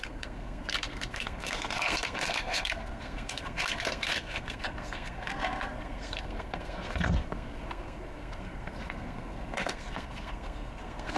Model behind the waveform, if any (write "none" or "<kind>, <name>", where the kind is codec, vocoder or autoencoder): codec, SNAC